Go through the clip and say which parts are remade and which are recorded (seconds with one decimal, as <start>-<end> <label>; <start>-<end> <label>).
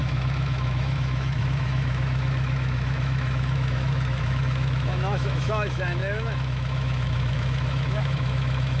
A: 0.0-8.8 remade